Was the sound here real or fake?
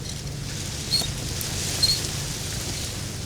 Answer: real